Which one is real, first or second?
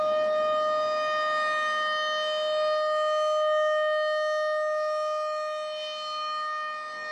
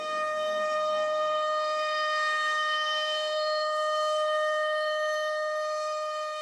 first